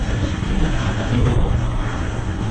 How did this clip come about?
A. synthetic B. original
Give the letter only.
A